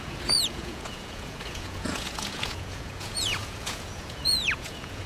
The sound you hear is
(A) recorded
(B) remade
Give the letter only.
B